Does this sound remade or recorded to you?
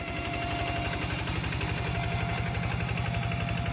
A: recorded